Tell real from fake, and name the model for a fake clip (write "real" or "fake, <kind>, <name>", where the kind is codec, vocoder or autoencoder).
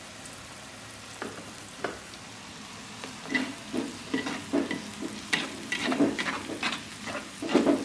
real